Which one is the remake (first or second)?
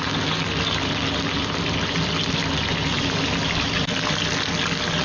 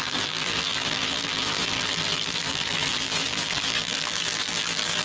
second